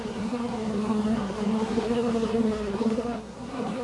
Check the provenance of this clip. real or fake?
fake